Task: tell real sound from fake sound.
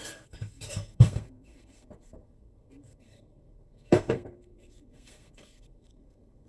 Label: fake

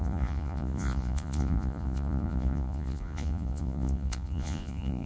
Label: fake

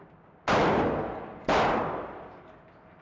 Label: real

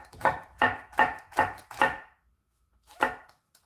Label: fake